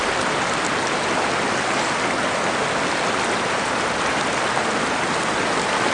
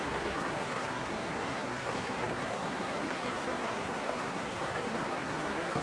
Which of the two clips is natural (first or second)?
first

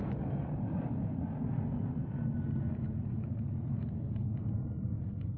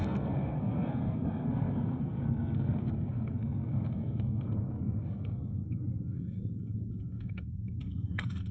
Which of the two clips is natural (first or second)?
first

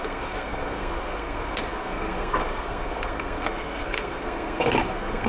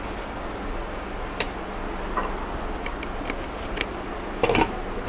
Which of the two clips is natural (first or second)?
second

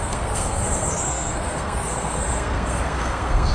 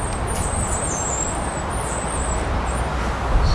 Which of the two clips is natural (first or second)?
second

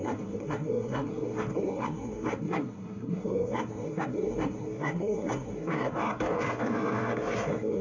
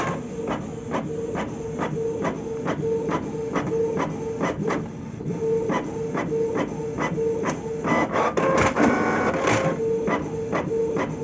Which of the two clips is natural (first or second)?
second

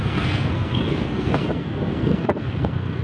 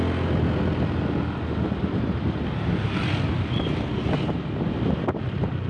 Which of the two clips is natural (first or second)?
second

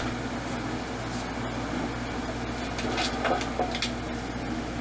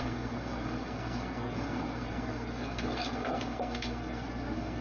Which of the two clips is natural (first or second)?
first